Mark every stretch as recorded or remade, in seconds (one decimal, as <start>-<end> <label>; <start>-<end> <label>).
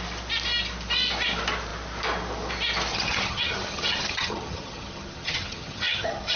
0.0-2.9 recorded; 2.9-6.4 remade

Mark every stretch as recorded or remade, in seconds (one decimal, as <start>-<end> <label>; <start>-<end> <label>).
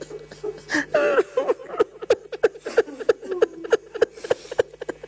0.0-5.1 recorded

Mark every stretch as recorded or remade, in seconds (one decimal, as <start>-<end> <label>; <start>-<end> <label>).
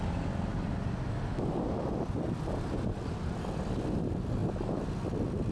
0.0-5.5 recorded